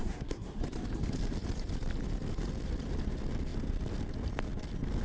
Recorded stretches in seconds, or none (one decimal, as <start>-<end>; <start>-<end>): 0.6-5.0